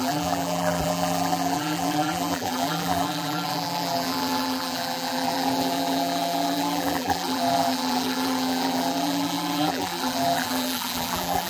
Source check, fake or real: fake